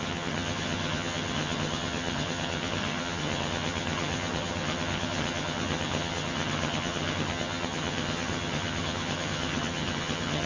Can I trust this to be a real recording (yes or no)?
no